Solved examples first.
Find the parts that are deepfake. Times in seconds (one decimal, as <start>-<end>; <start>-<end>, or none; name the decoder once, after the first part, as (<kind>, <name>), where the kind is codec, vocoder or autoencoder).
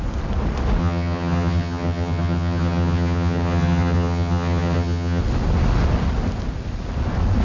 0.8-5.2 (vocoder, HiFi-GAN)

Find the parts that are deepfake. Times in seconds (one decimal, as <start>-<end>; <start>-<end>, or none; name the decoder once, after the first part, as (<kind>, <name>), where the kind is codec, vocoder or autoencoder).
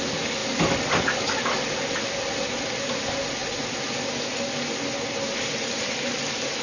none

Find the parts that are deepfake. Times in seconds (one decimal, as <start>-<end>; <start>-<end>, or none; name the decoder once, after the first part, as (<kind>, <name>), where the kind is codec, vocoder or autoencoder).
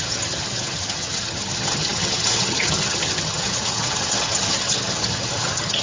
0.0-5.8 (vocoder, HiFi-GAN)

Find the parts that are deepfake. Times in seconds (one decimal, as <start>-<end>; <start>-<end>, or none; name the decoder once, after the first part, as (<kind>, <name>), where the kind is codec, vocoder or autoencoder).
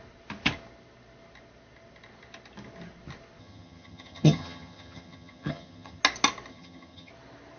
3.4-6.0 (vocoder, HiFi-GAN); 6.5-7.1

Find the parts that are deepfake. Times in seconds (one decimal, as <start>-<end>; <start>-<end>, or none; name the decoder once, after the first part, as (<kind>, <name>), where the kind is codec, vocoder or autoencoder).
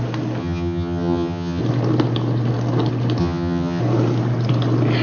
0.4-1.6 (vocoder, HiFi-GAN); 3.2-3.8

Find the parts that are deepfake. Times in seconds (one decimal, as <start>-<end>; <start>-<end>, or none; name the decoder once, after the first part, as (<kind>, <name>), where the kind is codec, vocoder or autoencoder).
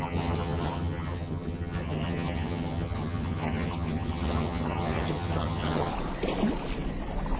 0.0-5.9 (vocoder, HiFi-GAN)